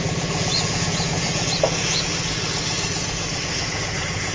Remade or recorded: remade